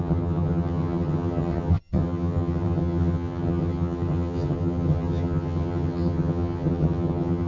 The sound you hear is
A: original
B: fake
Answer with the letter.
B